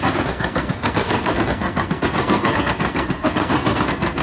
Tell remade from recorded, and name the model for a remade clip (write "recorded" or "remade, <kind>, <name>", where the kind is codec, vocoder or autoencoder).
remade, codec, SNAC